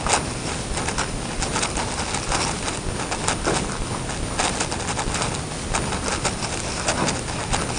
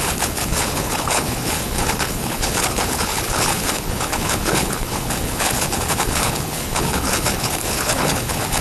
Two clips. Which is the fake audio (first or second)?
second